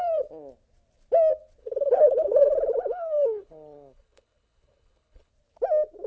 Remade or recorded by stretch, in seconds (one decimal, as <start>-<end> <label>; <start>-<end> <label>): 0.0-1.6 recorded; 1.6-5.3 remade; 5.3-6.1 recorded